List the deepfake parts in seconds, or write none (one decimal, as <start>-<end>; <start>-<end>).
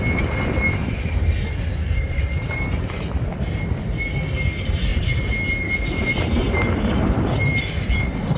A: 0.8-3.3; 4.9-7.3